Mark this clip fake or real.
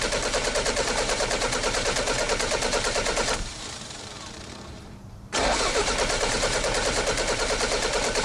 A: fake